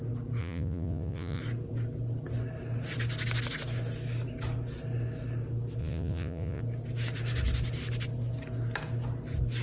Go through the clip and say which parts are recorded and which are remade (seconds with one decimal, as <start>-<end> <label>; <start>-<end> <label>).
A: 0.0-0.4 recorded; 0.4-1.4 remade; 1.4-5.8 recorded; 5.8-6.6 remade; 6.6-9.6 recorded